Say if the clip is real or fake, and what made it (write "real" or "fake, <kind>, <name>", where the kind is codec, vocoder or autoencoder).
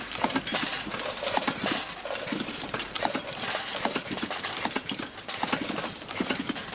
real